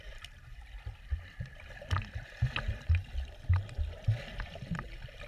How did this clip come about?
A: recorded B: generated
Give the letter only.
A